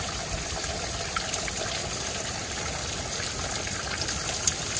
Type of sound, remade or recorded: recorded